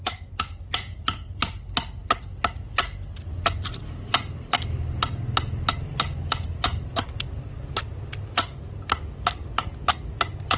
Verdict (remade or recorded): recorded